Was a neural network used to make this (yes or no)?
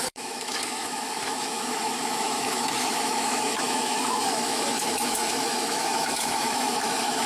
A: yes